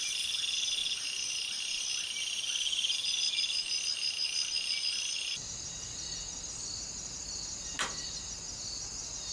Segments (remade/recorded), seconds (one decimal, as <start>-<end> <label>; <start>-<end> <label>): 0.0-9.3 recorded